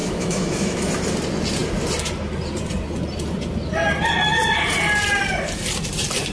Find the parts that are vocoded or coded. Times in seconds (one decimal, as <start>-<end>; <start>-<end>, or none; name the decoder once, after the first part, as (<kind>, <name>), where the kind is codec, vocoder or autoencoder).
0.0-0.9 (autoencoder, DAC-VAE)